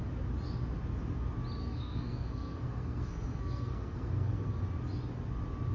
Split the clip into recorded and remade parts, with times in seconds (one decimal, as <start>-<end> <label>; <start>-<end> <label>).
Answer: 0.0-1.6 recorded; 1.6-4.6 remade; 4.6-5.7 recorded